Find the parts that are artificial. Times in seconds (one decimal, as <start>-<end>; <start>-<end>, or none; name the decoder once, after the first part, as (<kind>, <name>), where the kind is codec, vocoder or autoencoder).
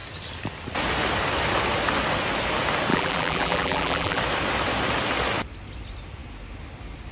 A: 2.9-4.2 (vocoder, BigVGAN v2)